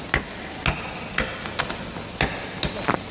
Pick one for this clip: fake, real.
real